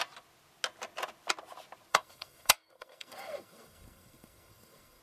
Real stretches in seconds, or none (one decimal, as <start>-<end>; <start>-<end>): 0.0-1.9